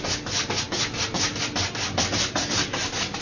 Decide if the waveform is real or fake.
real